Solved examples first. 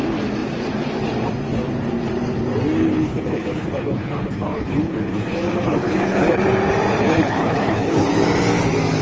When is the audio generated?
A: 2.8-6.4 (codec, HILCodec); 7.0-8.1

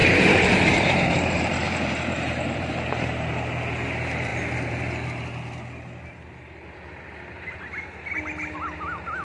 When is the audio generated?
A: 0.0-3.3 (vocoder, BigVGAN v2)

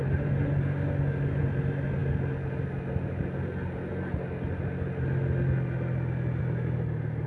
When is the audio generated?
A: none

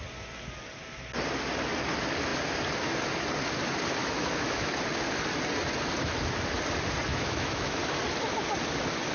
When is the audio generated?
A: 4.0-4.7 (autoencoder, DAC-VAE); 7.1-7.8

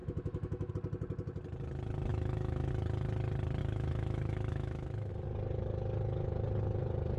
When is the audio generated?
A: 0.0-0.7 (autoencoder, DAC-VAE); 2.1-2.7; 3.6-5.1